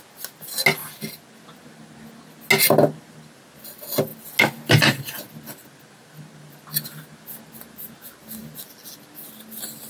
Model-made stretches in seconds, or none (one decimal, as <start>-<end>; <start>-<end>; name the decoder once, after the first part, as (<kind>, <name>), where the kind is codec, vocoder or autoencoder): none